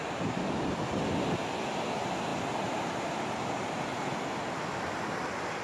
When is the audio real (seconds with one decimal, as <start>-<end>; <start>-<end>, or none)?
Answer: 0.0-5.6